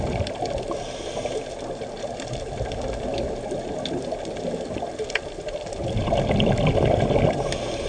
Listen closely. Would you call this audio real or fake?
real